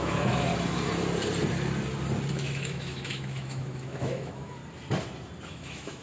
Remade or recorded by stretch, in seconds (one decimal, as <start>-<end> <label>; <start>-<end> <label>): 0.0-0.5 remade; 0.5-2.3 recorded; 2.3-4.6 remade; 4.6-5.5 recorded; 5.5-6.0 remade

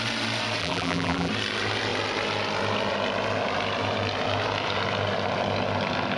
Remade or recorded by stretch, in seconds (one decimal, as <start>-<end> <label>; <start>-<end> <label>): 0.0-0.6 recorded; 0.6-1.3 remade; 1.3-6.2 recorded